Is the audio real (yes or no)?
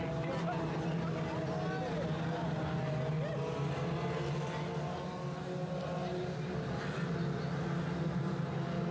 yes